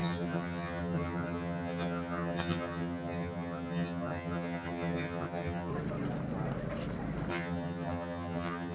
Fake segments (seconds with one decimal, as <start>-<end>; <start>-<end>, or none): 0.0-5.7; 7.3-8.7